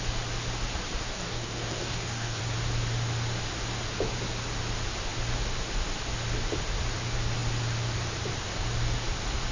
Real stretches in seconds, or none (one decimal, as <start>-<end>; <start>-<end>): 0.0-1.1; 2.4-9.5